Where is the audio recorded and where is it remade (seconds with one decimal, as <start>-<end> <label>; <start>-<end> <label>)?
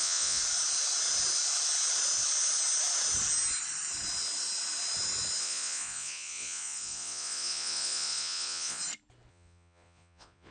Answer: 0.0-0.4 remade; 0.4-5.4 recorded; 5.4-8.8 remade; 8.8-9.3 recorded; 9.3-10.5 remade